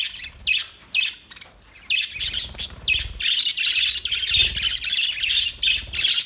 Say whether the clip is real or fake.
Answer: real